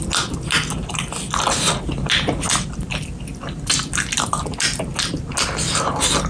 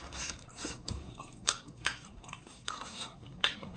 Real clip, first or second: first